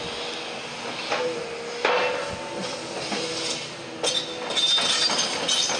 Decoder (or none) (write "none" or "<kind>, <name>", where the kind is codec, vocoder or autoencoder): none